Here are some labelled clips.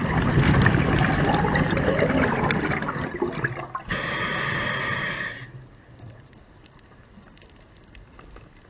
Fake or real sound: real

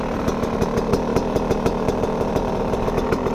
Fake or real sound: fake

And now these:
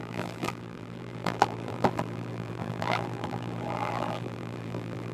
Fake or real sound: fake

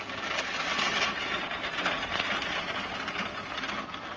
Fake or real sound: real